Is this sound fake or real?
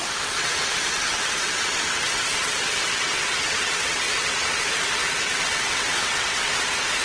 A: fake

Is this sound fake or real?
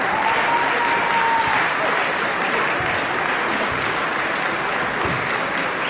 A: real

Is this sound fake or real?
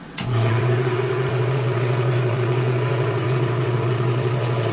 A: fake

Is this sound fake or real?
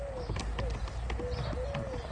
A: real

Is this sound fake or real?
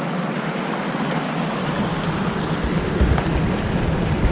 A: real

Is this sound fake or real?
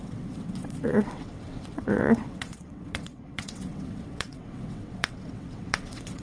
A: fake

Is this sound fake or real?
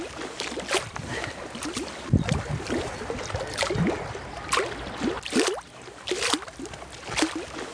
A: real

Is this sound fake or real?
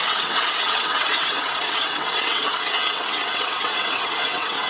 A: fake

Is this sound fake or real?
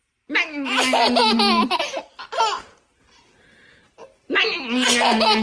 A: real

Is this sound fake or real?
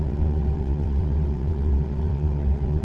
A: fake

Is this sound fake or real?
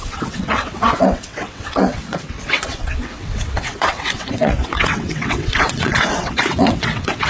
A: fake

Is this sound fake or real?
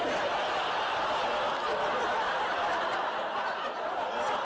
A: real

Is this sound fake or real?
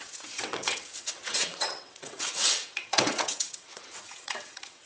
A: fake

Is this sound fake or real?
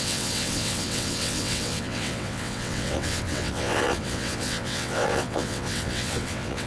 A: fake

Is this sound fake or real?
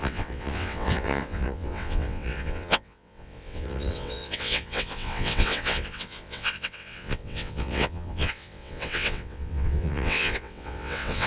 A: fake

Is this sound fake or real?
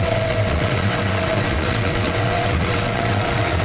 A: fake